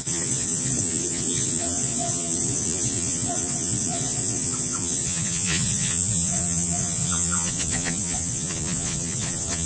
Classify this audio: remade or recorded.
remade